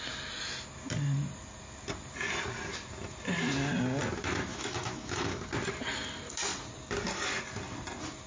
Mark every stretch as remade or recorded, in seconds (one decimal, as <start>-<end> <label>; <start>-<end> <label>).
0.0-4.5 recorded; 4.5-5.4 remade; 5.4-8.3 recorded